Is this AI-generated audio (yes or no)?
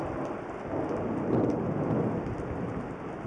no